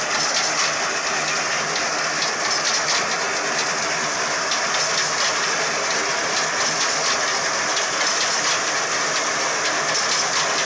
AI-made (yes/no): no